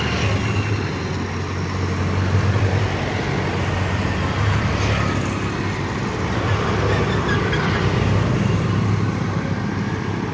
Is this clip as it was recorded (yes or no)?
yes